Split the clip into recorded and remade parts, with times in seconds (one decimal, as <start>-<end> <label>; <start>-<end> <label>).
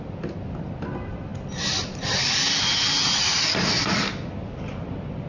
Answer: 0.0-5.3 recorded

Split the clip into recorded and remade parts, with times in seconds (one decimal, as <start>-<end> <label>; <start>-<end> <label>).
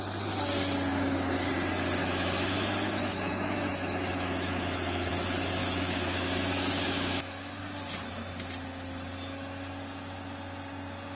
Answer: 0.0-0.9 recorded; 0.9-1.5 remade; 1.5-2.0 recorded; 2.0-5.1 remade; 5.1-5.6 recorded; 5.6-7.6 remade; 7.6-11.2 recorded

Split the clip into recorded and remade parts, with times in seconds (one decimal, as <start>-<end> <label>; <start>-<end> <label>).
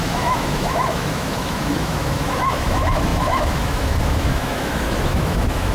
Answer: 0.0-5.7 remade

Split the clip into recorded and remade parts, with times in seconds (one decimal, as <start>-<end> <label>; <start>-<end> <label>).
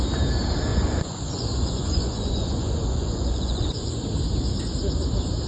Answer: 0.0-0.7 recorded; 0.7-4.0 remade; 4.0-5.5 recorded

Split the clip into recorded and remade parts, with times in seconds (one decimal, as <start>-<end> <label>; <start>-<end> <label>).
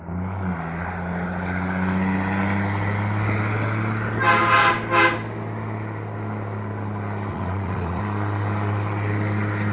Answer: 0.0-7.3 recorded; 7.3-8.0 remade; 8.0-9.7 recorded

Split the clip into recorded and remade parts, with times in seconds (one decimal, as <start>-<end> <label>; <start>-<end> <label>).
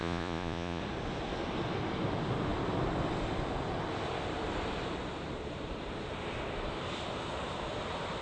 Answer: 0.0-0.8 remade; 0.8-8.2 recorded